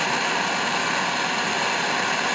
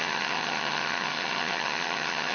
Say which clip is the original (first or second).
first